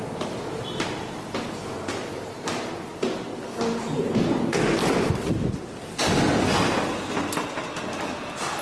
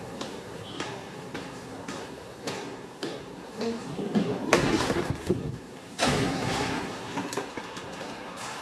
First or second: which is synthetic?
second